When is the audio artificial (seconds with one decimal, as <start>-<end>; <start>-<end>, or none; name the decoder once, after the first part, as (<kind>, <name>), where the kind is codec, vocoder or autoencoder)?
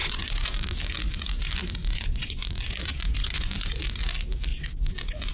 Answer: 0.0-0.8 (vocoder, Vocos); 1.8-4.0; 4.5-5.3